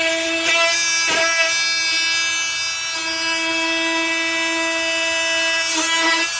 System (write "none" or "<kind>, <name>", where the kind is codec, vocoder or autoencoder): none